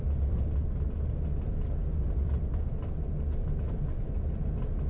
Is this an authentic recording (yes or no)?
yes